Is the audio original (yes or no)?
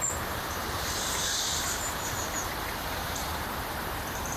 no